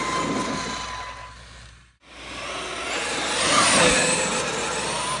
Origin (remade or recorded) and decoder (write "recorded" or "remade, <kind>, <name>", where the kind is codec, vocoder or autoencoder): recorded